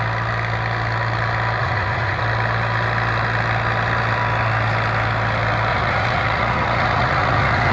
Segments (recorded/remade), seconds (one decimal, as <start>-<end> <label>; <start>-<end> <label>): 0.0-1.6 recorded; 1.6-2.2 remade; 2.2-5.7 recorded; 5.7-7.7 remade